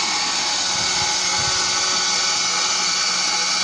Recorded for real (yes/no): yes